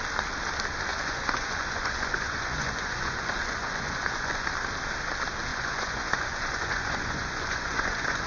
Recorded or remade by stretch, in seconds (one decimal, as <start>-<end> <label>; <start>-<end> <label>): 0.0-0.9 recorded; 0.9-4.5 remade; 4.5-5.5 recorded; 5.5-8.3 remade